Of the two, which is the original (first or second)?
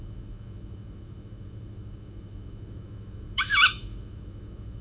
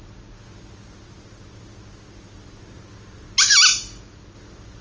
second